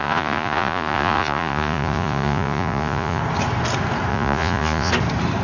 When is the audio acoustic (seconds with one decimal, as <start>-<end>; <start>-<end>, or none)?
3.2-4.1; 4.9-5.4